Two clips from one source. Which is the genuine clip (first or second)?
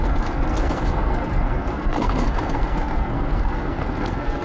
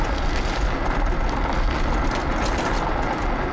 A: second